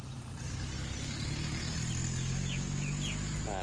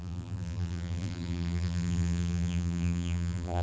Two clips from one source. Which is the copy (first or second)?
second